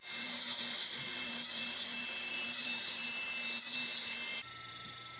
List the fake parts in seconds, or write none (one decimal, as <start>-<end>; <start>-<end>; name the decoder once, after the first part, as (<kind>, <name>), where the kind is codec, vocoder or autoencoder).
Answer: 0.0-5.2 (vocoder, BigVGAN v2)